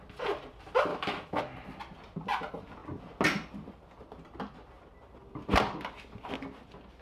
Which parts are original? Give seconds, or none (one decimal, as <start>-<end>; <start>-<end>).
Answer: 0.0-0.9; 1.4-7.0